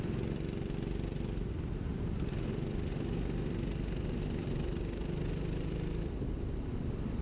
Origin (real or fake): real